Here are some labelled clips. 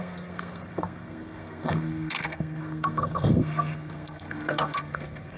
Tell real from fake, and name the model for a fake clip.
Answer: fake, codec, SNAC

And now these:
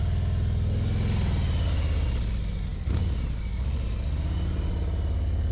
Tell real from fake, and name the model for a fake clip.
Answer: real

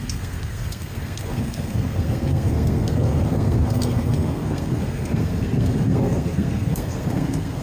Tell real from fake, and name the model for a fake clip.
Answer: fake, codec, SNAC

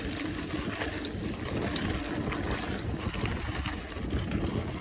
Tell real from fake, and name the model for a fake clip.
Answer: real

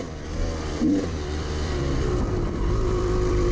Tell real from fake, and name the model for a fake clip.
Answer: fake, vocoder, BigVGAN v2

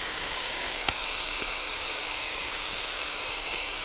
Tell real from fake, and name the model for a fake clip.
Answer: fake, codec, DAC